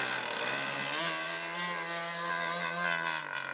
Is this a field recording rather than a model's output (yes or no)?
yes